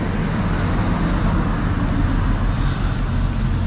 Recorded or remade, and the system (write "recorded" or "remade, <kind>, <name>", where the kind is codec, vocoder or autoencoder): recorded